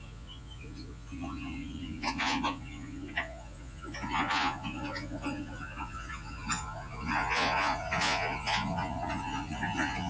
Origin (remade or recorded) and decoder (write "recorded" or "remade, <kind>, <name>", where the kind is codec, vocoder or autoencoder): remade, vocoder, Vocos